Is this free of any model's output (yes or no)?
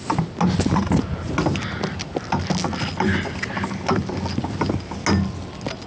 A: yes